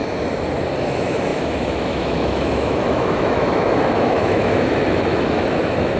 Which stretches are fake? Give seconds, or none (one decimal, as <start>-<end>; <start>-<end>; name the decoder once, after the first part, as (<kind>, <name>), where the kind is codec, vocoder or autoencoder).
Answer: 0.8-6.0 (autoencoder, DAC-VAE)